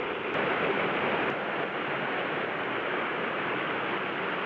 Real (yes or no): yes